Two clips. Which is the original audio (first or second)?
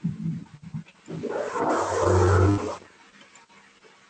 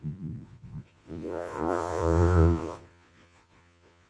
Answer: first